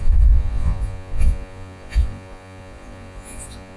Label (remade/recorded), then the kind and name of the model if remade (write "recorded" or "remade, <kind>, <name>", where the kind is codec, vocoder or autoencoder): remade, vocoder, Vocos